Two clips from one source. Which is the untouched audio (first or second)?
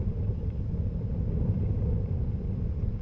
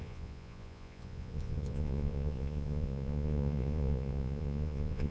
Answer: first